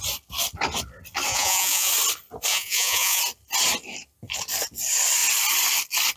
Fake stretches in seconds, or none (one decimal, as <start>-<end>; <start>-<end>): 1.3-1.9; 2.5-3.2